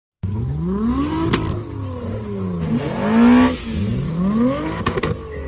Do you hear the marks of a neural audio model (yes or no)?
no